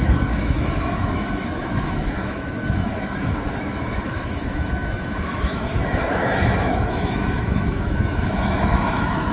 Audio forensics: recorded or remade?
remade